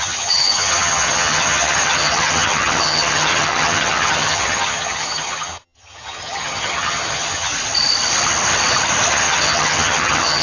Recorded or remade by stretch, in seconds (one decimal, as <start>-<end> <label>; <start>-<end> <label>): 0.0-7.5 remade; 7.5-9.1 recorded; 9.1-10.4 remade